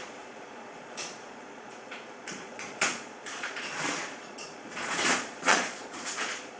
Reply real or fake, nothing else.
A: fake